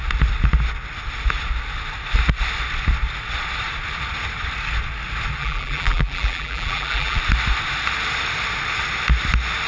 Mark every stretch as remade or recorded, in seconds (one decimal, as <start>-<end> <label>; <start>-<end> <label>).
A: 0.0-5.4 recorded; 5.4-7.2 remade; 7.2-9.7 recorded